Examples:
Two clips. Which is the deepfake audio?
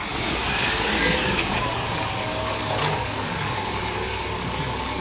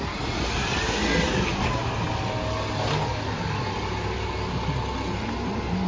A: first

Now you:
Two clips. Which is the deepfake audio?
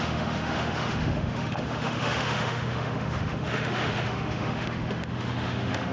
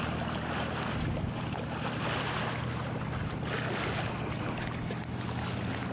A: first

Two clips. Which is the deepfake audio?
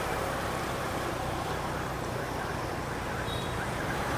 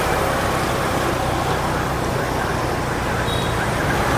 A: first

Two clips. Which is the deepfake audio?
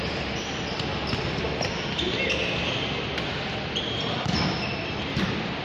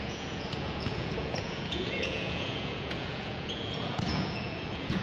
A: second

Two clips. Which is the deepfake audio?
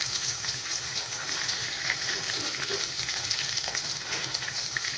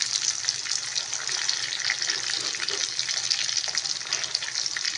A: first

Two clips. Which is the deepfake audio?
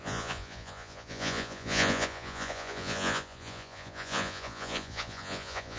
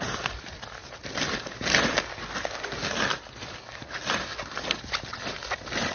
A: first